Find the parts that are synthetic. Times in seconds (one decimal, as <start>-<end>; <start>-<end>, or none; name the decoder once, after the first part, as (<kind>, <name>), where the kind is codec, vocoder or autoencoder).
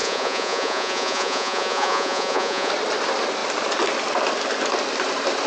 0.0-2.7 (vocoder, Vocos)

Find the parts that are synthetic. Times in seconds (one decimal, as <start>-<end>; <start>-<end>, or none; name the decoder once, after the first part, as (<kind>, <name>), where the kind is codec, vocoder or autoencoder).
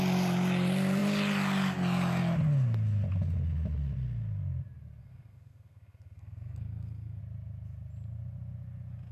5.0-7.2 (codec, SNAC)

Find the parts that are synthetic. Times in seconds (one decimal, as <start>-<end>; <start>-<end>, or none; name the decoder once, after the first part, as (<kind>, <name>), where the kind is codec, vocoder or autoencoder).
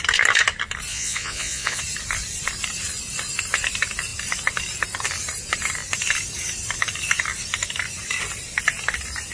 0.9-1.8 (vocoder, Vocos)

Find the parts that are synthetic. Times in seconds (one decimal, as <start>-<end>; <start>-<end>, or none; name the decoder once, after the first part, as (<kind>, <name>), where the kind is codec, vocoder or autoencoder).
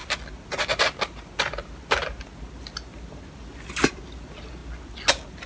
none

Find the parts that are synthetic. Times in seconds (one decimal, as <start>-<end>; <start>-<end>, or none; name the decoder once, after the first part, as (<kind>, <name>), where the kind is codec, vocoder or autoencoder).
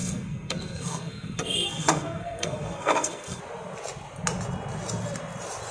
0.0-3.4 (codec, SNAC)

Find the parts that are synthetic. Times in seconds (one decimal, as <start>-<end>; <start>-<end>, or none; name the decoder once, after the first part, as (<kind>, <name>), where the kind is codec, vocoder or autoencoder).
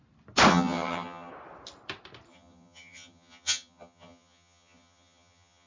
0.5-1.3 (vocoder, HiFi-GAN); 2.3-5.7